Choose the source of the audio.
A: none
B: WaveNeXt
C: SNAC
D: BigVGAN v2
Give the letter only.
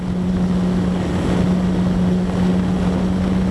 A